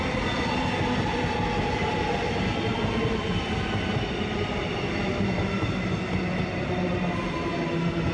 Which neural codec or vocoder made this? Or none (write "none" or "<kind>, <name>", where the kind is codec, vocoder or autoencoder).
none